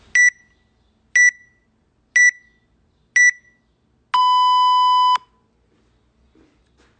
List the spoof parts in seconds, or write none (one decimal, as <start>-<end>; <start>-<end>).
none